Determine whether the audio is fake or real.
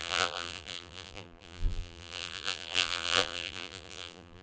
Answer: fake